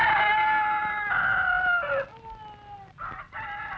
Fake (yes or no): no